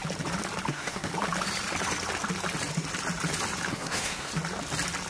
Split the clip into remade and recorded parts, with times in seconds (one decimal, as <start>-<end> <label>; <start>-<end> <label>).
0.0-0.7 recorded; 0.7-1.1 remade; 1.1-3.7 recorded; 3.7-4.3 remade; 4.3-5.1 recorded